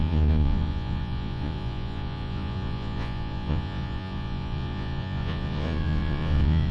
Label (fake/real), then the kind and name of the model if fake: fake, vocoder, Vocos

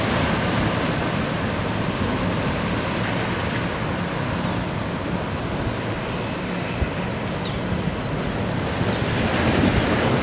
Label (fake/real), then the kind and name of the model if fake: real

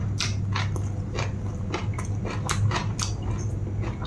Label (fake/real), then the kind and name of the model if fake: real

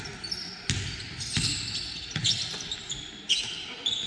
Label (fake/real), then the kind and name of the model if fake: real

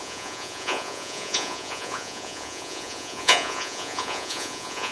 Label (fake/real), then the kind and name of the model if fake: fake, vocoder, Vocos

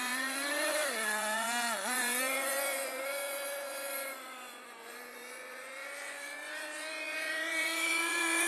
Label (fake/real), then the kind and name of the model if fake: fake, vocoder, Vocos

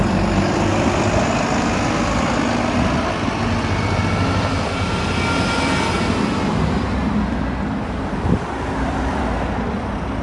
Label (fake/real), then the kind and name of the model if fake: real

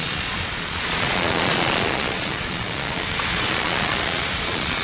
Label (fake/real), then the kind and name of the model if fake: fake, vocoder, Vocos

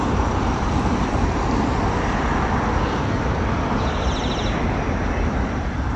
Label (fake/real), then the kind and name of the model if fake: real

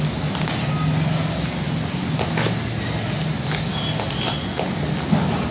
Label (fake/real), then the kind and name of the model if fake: real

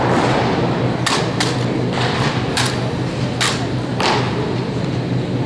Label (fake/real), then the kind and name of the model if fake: real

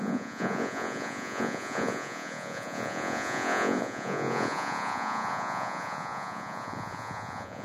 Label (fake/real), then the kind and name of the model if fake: fake, vocoder, Vocos